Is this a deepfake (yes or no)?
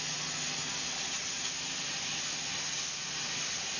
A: no